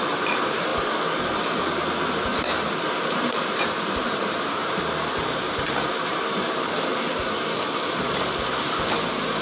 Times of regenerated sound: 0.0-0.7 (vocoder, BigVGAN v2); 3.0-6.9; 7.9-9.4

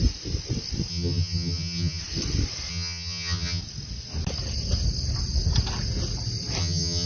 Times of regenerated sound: 0.9-2.0 (vocoder, HiFi-GAN); 2.7-3.6; 6.6-7.1

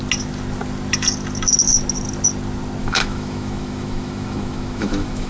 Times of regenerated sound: 2.8-5.3 (autoencoder, DAC-VAE)

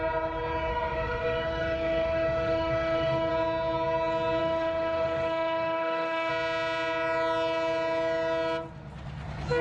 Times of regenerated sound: 0.7-3.3 (autoencoder, DAC-VAE); 4.4-6.3

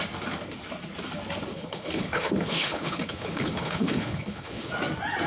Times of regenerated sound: 1.5-4.7 (codec, HILCodec)